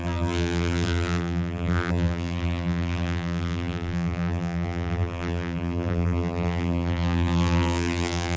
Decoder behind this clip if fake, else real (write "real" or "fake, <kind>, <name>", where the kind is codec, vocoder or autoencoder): fake, vocoder, BigVGAN v2